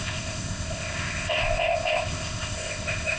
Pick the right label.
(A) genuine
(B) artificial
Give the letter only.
B